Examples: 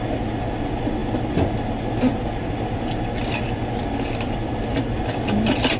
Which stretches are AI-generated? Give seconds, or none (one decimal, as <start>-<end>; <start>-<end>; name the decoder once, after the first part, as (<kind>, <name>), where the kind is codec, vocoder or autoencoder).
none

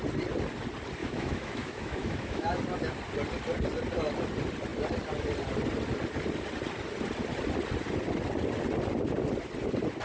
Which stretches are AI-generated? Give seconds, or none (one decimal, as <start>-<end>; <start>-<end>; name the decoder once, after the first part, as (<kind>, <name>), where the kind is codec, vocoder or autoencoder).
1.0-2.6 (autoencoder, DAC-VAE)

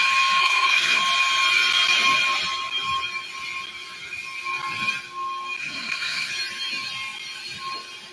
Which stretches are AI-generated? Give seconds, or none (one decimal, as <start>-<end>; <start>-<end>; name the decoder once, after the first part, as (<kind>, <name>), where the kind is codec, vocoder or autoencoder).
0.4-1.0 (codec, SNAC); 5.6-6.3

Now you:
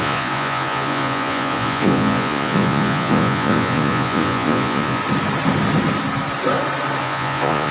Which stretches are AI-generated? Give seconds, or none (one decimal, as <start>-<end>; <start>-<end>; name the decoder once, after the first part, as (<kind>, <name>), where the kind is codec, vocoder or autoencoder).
0.0-5.0 (vocoder, Vocos); 7.0-7.7